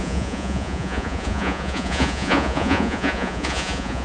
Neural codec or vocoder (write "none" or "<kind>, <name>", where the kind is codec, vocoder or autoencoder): vocoder, Vocos